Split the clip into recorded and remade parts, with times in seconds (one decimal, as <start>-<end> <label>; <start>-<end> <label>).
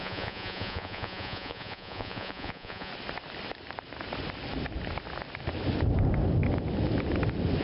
0.0-2.9 remade; 2.9-7.6 recorded